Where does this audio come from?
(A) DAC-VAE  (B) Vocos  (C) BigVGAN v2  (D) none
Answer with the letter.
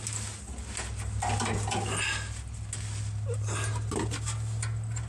D